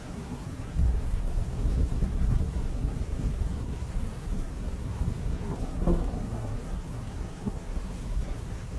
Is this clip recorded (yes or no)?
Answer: no